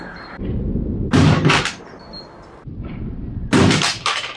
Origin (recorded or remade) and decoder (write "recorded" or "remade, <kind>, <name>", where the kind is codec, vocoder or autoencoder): recorded